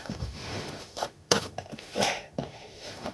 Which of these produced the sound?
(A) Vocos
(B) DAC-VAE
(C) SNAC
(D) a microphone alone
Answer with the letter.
B